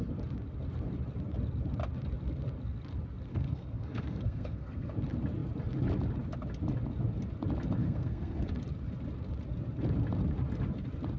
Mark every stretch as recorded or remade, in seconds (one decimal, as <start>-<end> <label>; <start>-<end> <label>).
0.0-3.3 recorded; 3.3-4.9 remade; 4.9-7.8 recorded; 7.8-8.5 remade; 8.5-11.2 recorded